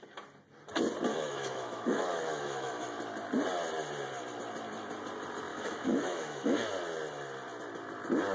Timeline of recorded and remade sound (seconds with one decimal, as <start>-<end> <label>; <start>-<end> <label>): 0.0-1.1 recorded; 1.1-3.0 remade; 3.0-5.5 recorded; 5.5-6.7 remade; 6.7-8.3 recorded